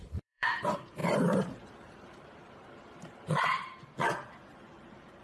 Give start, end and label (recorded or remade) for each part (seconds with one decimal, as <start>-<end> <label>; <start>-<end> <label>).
0.0-3.8 remade; 3.8-4.5 recorded; 4.5-5.2 remade